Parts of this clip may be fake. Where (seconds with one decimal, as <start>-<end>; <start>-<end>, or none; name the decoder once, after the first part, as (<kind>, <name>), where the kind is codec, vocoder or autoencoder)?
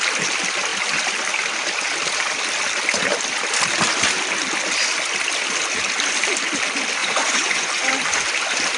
7.0-7.9 (vocoder, Vocos)